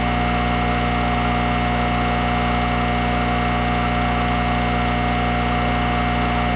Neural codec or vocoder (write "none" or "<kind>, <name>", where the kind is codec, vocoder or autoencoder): none